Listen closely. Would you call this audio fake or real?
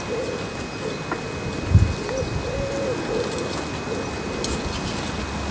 real